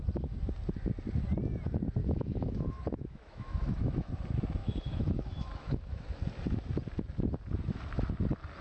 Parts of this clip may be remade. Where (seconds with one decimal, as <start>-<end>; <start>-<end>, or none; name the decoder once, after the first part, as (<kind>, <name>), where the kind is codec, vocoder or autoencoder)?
2.0-4.1 (autoencoder, DAC-VAE); 4.6-6.2